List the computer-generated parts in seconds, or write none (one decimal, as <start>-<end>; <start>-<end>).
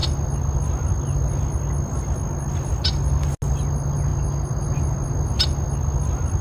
none